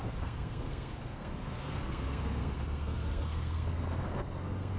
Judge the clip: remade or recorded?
remade